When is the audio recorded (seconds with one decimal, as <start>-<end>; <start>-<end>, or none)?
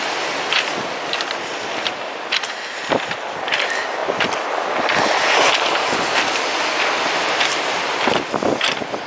0.0-9.1